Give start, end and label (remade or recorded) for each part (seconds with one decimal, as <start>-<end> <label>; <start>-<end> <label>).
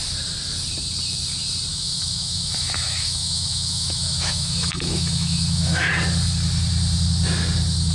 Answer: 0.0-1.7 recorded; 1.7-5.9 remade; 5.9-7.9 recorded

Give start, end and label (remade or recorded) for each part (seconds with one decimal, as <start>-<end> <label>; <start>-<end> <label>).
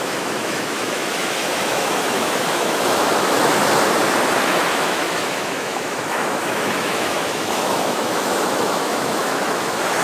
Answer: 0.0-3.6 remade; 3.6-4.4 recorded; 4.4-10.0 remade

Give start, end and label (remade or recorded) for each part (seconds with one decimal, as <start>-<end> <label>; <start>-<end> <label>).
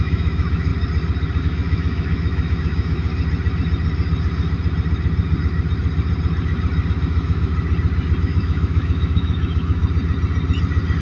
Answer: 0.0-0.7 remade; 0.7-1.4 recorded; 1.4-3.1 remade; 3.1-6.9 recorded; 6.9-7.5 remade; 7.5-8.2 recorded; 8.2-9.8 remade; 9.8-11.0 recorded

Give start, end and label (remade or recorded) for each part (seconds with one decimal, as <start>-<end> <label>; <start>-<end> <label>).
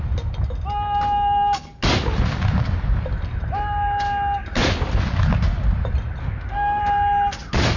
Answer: 0.0-6.2 recorded; 6.2-6.8 remade; 6.8-7.8 recorded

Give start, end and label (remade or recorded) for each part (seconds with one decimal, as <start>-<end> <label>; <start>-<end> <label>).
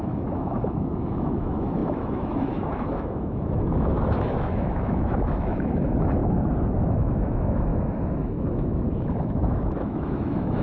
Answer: 0.0-6.2 remade; 6.2-6.8 recorded; 6.8-10.6 remade